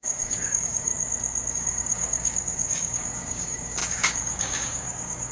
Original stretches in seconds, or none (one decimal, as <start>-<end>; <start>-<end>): 0.9-1.5